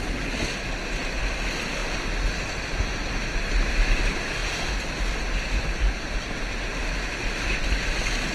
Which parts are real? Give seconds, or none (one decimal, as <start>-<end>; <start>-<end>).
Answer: 0.0-8.3